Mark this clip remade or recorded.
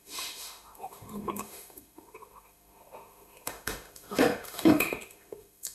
remade